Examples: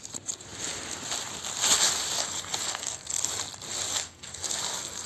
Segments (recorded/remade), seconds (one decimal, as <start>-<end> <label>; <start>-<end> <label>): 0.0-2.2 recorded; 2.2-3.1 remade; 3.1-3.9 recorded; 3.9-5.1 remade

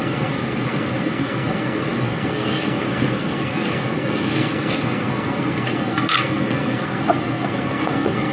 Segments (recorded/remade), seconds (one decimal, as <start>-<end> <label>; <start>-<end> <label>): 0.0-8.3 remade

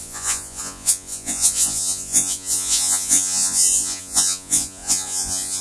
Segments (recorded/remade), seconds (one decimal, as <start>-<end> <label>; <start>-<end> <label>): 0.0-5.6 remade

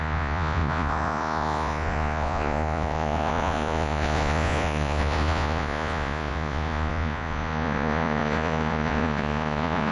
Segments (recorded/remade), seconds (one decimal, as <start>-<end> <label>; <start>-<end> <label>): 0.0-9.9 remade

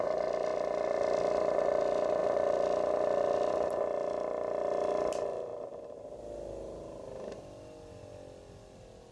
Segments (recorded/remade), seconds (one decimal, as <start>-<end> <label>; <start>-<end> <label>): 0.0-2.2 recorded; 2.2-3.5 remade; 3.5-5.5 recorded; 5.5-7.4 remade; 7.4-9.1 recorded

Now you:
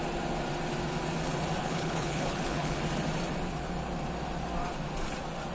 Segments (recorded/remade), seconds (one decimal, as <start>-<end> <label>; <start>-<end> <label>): 0.0-1.6 recorded; 1.6-2.8 remade; 2.8-5.5 recorded